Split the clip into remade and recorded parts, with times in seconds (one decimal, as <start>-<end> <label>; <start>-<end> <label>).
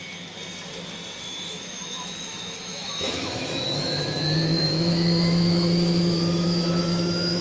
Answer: 0.0-0.4 remade; 0.4-1.2 recorded; 1.2-7.4 remade